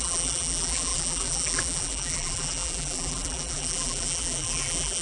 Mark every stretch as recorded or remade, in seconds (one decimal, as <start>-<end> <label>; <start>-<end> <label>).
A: 0.0-5.0 remade